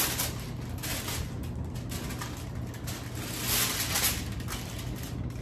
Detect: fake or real real